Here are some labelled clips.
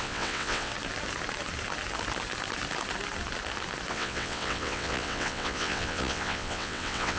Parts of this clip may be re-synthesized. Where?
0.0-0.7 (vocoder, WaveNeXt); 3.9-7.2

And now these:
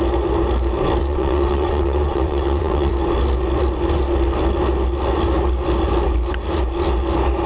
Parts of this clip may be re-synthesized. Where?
1.0-2.9 (vocoder, WaveNeXt)